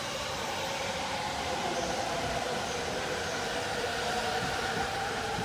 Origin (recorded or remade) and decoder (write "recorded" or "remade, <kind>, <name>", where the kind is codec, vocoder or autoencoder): remade, vocoder, BigVGAN v2